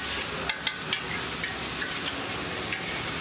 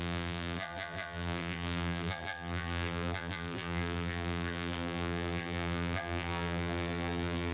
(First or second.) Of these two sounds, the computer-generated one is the second